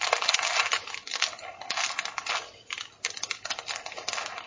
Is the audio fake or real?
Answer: real